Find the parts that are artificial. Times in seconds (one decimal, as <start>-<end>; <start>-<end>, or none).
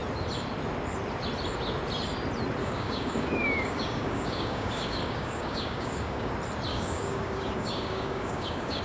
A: 2.6-6.3; 6.7-8.8